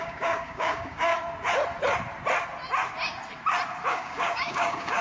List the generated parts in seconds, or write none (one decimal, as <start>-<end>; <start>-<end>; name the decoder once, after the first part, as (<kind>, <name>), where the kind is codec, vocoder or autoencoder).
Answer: 0.0-1.1 (codec, DAC); 3.9-5.0